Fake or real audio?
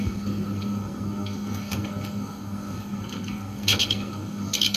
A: fake